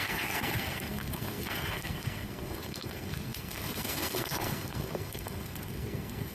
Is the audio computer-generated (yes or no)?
yes